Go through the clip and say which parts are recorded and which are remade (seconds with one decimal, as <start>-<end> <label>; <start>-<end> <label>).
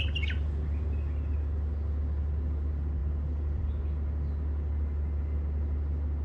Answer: 0.0-6.2 recorded